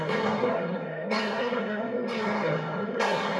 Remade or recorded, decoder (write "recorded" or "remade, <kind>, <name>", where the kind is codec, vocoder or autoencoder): remade, codec, SNAC